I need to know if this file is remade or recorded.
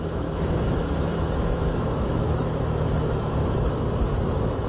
remade